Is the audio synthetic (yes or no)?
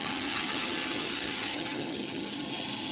yes